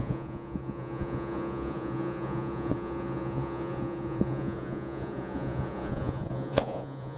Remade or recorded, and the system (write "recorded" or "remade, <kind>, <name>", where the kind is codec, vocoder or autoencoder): remade, vocoder, Vocos